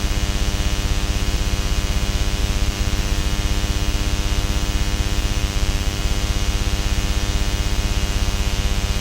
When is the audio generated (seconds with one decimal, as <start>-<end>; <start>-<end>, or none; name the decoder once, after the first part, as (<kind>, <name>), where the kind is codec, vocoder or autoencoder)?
2.4-3.2 (vocoder, BigVGAN v2); 5.4-6.0